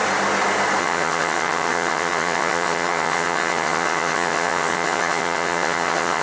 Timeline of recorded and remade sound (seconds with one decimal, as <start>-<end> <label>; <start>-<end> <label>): 0.0-0.8 recorded; 0.8-6.2 remade

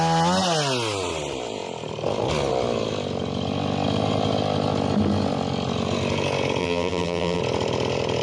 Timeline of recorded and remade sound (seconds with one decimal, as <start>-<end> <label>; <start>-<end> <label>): 0.0-6.6 recorded; 6.6-7.4 remade; 7.4-8.2 recorded

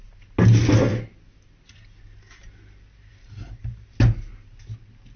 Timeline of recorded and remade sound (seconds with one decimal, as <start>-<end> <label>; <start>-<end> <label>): 0.0-5.2 recorded

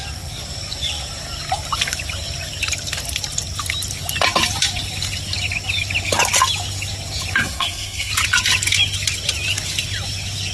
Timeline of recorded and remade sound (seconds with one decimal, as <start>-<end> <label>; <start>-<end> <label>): 0.0-7.4 recorded; 7.4-8.1 remade; 8.1-10.5 recorded

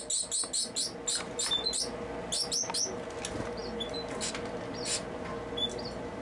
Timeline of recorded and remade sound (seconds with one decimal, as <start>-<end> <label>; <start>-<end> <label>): 0.0-6.2 recorded